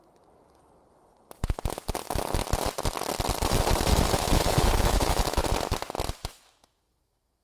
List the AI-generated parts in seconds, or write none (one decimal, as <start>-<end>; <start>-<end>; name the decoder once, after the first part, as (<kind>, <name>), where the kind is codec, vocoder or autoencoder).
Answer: 3.9-5.4 (autoencoder, DAC-VAE); 6.2-7.4